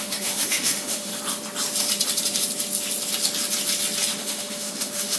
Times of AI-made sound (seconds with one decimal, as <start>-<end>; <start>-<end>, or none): 0.0-1.1; 4.2-5.2